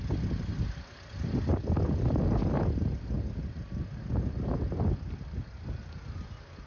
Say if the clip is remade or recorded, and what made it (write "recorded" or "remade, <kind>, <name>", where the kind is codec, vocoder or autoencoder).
recorded